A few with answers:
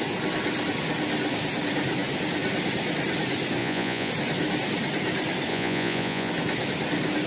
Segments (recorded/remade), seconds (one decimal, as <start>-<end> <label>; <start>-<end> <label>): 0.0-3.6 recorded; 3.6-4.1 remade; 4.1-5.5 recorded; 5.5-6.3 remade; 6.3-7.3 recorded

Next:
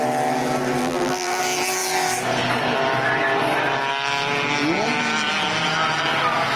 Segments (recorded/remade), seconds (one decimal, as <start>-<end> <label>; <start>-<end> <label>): 0.0-0.8 recorded; 0.8-1.4 remade; 1.4-6.6 recorded

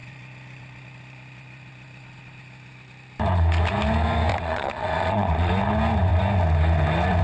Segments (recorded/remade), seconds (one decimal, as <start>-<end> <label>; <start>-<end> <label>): 0.0-4.3 recorded; 4.3-5.5 remade; 5.5-7.2 recorded

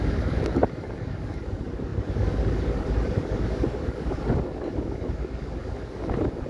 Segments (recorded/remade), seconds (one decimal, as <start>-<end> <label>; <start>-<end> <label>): 0.0-6.5 remade

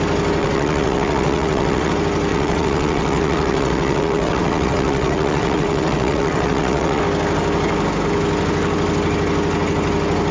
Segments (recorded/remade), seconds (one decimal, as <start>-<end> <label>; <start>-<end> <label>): 0.0-0.4 recorded; 0.4-1.9 remade; 1.9-2.3 recorded; 2.3-7.0 remade; 7.0-10.3 recorded

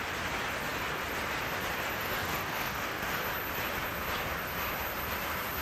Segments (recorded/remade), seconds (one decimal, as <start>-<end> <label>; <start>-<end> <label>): 0.0-2.0 recorded; 2.0-3.2 remade; 3.2-5.6 recorded